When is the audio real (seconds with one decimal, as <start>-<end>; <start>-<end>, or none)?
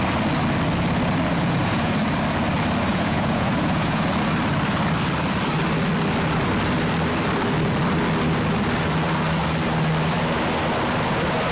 0.0-1.3; 2.0-2.9; 4.1-11.5